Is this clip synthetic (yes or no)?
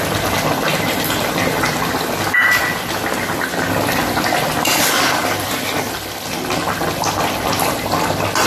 no